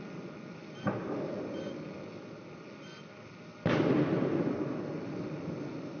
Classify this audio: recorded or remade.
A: recorded